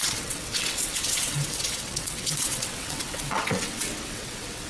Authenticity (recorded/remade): remade